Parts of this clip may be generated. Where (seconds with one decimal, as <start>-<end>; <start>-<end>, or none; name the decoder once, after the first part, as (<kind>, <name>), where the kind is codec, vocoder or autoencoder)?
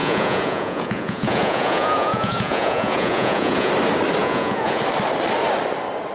0.0-3.7 (vocoder, Vocos); 4.2-4.8